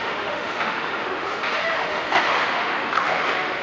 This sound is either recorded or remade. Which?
remade